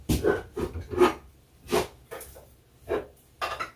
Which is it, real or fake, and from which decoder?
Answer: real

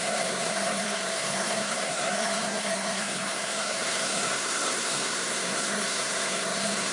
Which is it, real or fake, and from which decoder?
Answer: fake, codec, SNAC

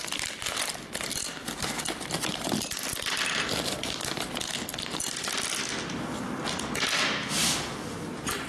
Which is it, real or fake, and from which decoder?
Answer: real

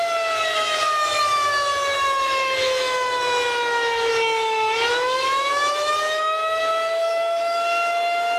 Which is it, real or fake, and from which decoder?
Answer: fake, autoencoder, DAC-VAE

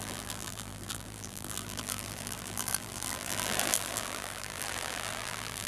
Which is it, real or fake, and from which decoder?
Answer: fake, vocoder, BigVGAN v2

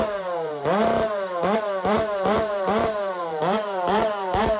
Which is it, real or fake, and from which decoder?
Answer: fake, vocoder, BigVGAN v2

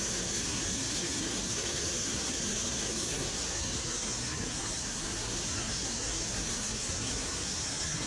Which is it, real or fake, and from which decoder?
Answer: fake, codec, SNAC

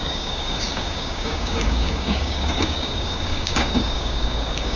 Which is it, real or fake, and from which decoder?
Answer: fake, codec, DAC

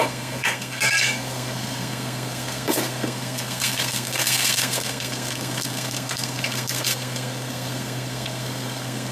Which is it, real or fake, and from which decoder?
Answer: fake, codec, SNAC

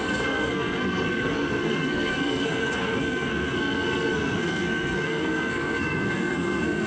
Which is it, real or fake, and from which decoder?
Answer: fake, codec, SNAC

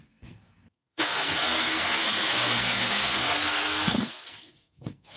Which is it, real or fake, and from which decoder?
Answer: fake, codec, SNAC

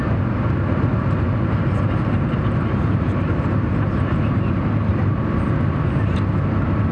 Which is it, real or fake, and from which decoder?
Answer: real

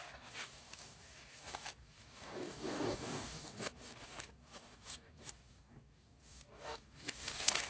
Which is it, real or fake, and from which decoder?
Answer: fake, codec, DAC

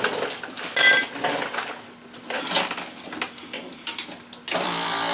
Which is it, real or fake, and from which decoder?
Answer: real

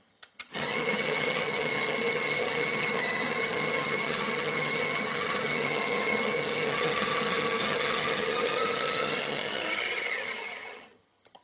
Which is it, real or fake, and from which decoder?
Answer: fake, vocoder, HiFi-GAN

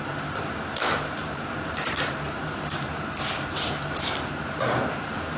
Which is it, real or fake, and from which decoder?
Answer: fake, vocoder, BigVGAN v2